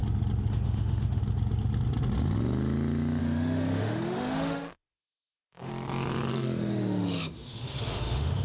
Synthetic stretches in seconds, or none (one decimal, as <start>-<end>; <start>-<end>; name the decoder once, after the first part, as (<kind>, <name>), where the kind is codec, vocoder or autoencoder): 0.5-1.2 (autoencoder, DAC-VAE); 3.2-5.7; 6.3-8.4